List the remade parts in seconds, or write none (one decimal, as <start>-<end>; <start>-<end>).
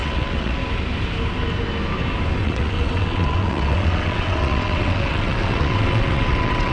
0.0-0.6; 2.4-6.7